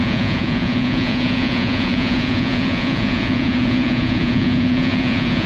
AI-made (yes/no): yes